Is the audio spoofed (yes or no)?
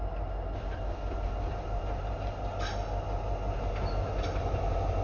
no